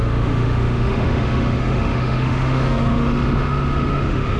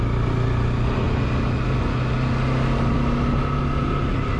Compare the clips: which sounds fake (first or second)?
first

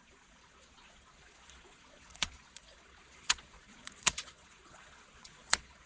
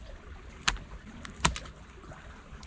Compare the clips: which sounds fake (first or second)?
first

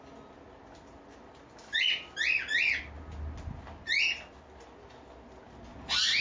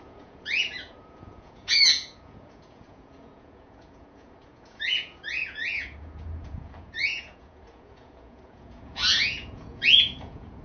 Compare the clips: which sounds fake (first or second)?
second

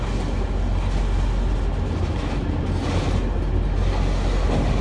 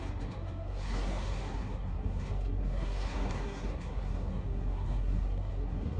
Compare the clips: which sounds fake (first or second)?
second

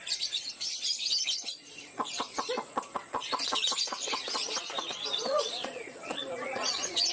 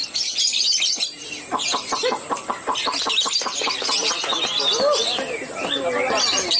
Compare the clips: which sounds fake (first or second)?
first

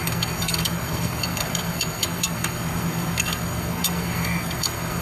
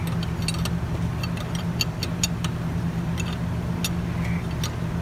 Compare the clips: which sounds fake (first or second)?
first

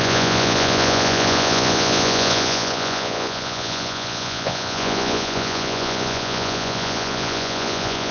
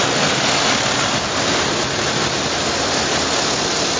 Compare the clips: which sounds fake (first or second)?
first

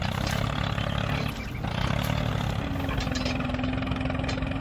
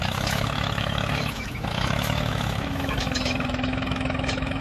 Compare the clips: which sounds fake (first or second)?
second